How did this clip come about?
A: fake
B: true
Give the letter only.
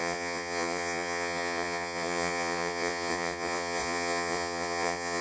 A